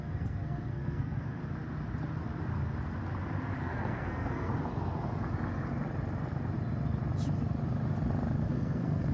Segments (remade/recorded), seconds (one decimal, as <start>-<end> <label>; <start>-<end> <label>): 0.0-1.4 remade; 1.4-3.6 recorded; 3.6-4.5 remade; 4.5-8.4 recorded; 8.4-9.1 remade